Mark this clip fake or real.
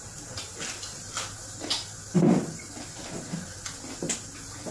real